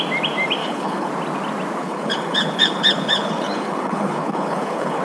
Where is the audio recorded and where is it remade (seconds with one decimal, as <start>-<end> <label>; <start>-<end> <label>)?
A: 0.0-0.6 recorded; 0.6-1.1 remade; 1.1-1.8 recorded; 1.8-5.0 remade